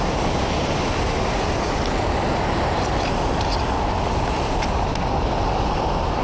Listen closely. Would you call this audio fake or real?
real